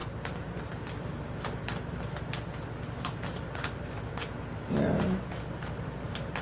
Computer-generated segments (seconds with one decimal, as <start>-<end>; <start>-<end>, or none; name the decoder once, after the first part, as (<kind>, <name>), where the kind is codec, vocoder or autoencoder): none